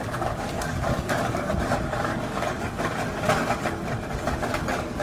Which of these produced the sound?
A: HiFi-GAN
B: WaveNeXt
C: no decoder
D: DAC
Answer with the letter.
D